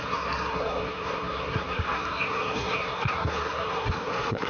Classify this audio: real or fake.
fake